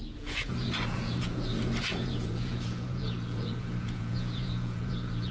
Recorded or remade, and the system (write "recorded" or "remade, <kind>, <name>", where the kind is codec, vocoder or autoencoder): remade, vocoder, Vocos